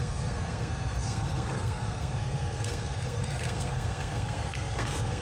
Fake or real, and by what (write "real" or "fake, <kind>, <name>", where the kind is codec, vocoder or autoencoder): fake, codec, SNAC